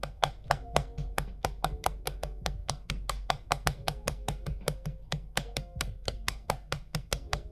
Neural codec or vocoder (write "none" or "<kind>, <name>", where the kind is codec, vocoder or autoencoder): codec, SNAC